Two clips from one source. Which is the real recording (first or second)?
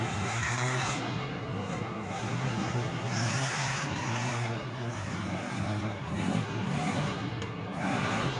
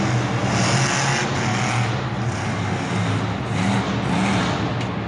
second